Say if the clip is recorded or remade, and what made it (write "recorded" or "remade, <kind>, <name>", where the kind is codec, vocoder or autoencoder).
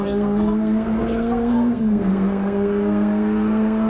remade, codec, SNAC